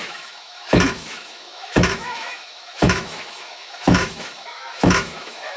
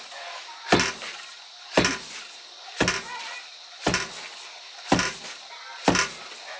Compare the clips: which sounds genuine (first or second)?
second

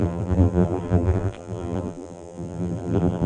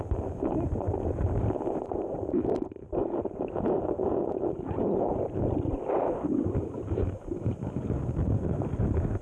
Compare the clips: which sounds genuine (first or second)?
second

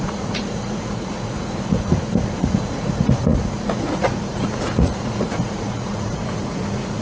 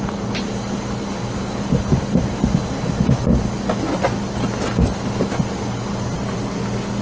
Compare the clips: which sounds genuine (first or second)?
second